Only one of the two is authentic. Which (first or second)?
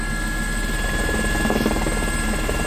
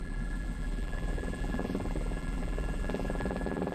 first